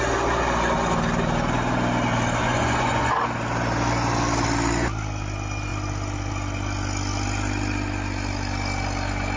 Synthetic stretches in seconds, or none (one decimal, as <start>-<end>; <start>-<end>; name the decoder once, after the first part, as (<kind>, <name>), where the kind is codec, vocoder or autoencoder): 2.4-3.1 (vocoder, Vocos)